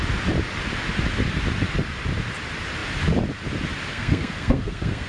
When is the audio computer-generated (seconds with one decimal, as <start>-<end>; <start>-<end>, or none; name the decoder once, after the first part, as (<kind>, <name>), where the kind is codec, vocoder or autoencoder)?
3.9-5.1 (codec, SNAC)